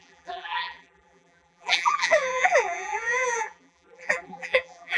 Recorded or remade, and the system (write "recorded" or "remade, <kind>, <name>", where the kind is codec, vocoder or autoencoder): remade, vocoder, BigVGAN v2